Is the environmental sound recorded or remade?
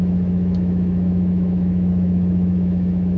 remade